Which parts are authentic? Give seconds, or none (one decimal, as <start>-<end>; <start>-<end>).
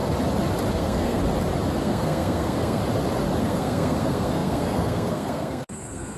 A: 0.0-0.7; 1.2-1.8; 2.8-3.4